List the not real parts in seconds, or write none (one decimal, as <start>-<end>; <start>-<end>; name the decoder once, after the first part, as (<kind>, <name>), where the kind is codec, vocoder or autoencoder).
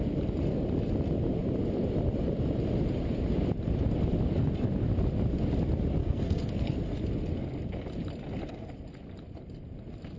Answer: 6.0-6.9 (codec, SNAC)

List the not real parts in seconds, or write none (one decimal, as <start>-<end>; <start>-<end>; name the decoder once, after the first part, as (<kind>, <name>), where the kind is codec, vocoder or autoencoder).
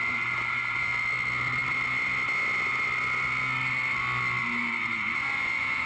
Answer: 0.0-0.9 (vocoder, Vocos); 4.4-5.9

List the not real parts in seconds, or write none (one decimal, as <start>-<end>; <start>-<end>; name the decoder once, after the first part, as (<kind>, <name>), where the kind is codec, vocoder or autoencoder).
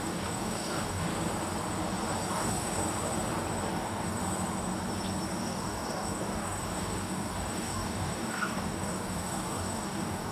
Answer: 0.0-1.1 (codec, DAC); 2.3-2.8; 3.7-4.2; 5.4-10.3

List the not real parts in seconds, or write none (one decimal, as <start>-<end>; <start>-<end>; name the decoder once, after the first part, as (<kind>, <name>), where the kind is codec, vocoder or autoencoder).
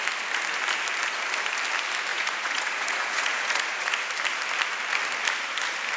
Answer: 2.1-4.1 (vocoder, Vocos)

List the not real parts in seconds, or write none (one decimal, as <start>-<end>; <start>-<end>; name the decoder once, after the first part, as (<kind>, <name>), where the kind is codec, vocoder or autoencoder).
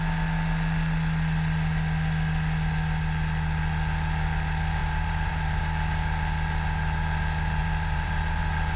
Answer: 4.8-5.6 (vocoder, BigVGAN v2); 7.6-8.4